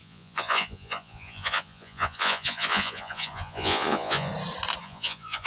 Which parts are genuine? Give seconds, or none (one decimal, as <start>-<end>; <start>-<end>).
4.3-4.8